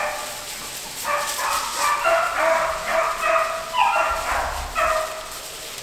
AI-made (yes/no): no